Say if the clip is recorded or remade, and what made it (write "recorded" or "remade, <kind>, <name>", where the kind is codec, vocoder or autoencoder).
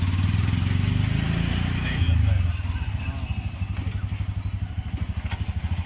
recorded